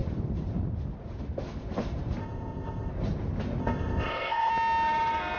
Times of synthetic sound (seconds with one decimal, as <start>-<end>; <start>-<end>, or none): 2.2-2.9; 3.6-4.5